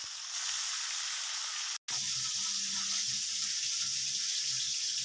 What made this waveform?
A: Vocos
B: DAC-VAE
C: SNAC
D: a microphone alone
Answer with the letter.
D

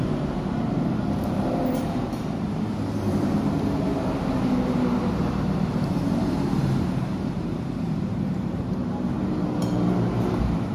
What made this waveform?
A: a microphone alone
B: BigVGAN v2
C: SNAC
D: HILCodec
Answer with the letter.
B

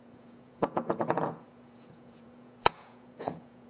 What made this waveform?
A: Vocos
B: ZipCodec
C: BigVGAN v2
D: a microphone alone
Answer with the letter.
A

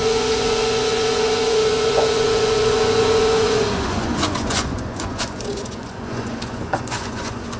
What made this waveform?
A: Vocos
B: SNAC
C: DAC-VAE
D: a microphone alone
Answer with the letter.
A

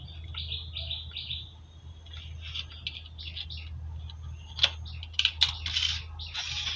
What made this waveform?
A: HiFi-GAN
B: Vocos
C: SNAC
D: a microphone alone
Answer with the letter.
D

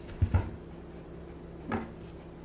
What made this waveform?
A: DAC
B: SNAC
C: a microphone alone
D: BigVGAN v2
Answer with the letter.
C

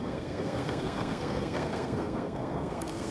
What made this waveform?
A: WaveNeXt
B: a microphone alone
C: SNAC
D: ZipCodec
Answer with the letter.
C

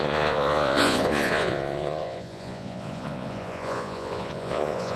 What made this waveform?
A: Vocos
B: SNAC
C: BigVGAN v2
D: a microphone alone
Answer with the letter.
A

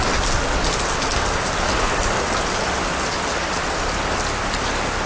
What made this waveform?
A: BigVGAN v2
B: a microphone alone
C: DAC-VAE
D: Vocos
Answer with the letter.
B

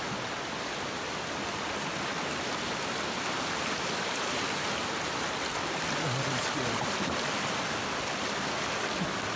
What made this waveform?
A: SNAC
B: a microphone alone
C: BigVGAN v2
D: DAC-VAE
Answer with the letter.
B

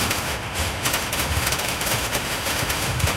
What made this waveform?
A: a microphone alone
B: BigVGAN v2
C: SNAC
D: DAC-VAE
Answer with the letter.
D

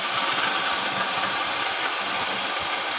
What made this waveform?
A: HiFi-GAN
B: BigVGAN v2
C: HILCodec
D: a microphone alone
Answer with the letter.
B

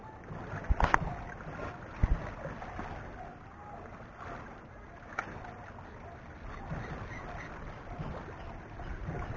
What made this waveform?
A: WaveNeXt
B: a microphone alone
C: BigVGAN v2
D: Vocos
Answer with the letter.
B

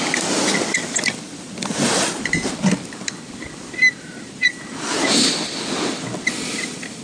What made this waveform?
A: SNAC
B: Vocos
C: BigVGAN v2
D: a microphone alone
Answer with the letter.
C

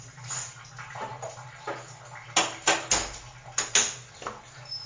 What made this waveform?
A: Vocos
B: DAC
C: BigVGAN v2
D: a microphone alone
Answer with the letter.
D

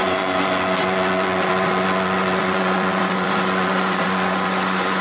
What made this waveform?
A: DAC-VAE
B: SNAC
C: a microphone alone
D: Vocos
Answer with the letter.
D